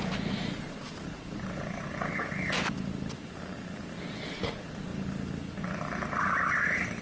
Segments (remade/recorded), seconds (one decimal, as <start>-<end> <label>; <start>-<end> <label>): 0.0-2.1 remade; 2.1-4.3 recorded; 4.3-4.9 remade; 4.9-7.0 recorded